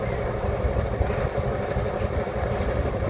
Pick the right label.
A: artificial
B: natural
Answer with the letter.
B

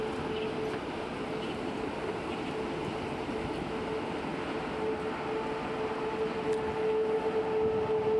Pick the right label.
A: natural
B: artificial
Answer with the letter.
A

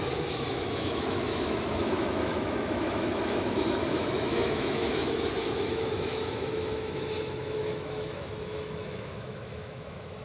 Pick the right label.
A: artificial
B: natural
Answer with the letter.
A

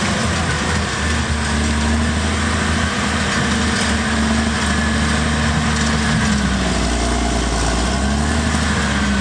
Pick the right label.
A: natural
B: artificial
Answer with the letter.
A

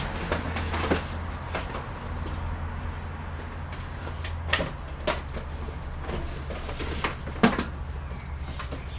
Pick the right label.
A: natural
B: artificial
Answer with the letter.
A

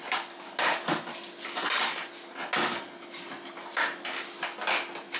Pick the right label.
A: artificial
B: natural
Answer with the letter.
B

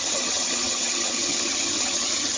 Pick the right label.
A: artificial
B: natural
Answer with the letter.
A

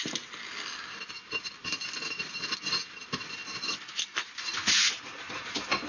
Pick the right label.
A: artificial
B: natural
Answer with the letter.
B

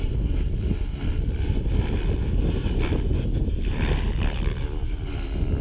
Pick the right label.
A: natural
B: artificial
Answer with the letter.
A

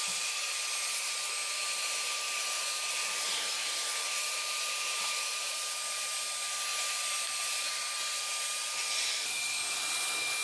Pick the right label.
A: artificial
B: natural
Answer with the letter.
B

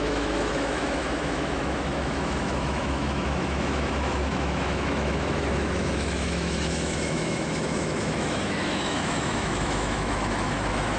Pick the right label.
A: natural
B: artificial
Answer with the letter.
B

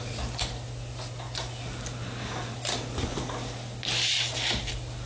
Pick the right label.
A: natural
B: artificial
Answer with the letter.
A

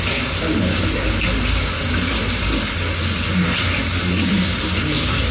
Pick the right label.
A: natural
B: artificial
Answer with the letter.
A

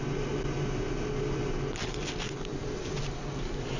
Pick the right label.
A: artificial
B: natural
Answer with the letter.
B